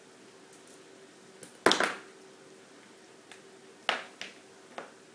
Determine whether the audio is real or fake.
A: real